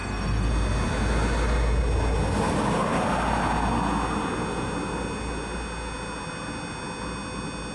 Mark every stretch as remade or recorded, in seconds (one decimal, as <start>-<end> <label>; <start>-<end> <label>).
0.0-0.5 remade; 0.5-7.7 recorded